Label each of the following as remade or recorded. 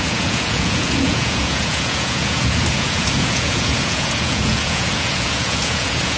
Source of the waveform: remade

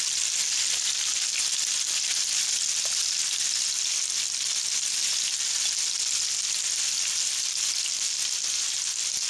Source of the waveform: recorded